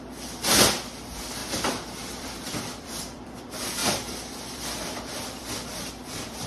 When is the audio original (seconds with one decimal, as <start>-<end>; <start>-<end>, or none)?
0.0-1.4; 3.4-3.8